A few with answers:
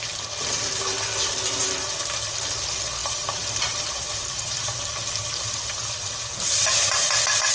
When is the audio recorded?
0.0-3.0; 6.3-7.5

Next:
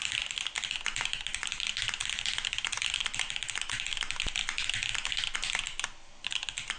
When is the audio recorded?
0.0-6.8

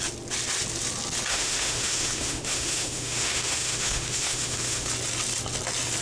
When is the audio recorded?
0.0-1.3; 4.9-6.0

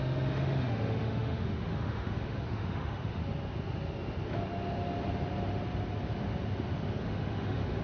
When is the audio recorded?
3.2-7.0

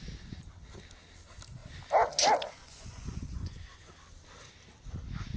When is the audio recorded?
0.0-2.6; 3.9-5.4